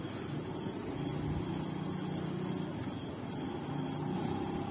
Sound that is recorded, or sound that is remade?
recorded